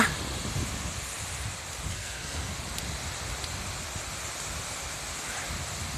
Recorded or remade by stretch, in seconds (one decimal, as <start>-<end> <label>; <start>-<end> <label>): 0.0-1.9 recorded; 1.9-2.5 remade; 2.5-6.0 recorded